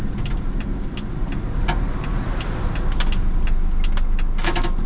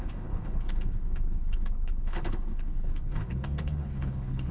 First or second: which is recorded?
first